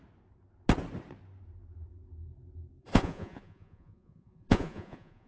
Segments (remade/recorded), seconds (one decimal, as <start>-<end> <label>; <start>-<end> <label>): 0.0-2.8 recorded; 2.8-5.3 remade